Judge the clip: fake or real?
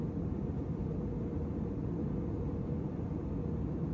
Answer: real